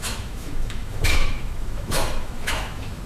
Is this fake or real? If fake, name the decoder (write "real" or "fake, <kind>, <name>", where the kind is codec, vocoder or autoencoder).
fake, autoencoder, DAC-VAE